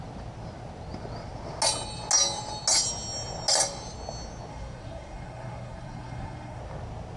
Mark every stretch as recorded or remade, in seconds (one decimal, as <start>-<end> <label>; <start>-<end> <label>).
0.0-4.5 recorded; 4.5-6.6 remade; 6.6-7.2 recorded